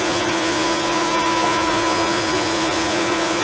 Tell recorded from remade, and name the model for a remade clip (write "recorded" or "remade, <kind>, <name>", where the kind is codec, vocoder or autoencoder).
remade, vocoder, Vocos